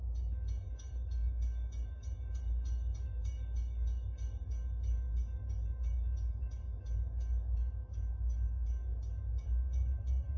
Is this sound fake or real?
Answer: fake